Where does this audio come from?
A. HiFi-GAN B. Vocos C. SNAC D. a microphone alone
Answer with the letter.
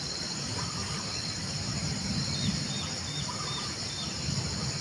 D